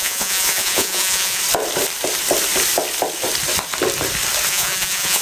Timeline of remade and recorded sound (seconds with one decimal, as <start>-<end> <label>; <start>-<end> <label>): 0.0-1.4 remade; 1.4-4.5 recorded; 4.5-5.2 remade